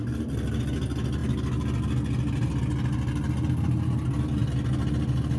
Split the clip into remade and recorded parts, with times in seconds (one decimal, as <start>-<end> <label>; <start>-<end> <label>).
0.0-5.4 recorded